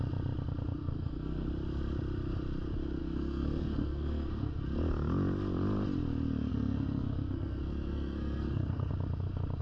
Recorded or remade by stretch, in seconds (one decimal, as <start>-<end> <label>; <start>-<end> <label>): 0.0-0.8 recorded; 0.8-1.5 remade; 1.5-3.0 recorded; 3.0-4.6 remade; 4.6-6.5 recorded; 6.5-8.9 remade; 8.9-9.6 recorded